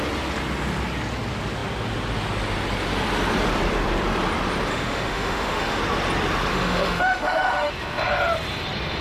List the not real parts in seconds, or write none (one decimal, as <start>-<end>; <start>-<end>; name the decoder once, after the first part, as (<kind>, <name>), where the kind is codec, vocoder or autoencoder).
4.7-5.8 (autoencoder, DAC-VAE); 6.5-7.7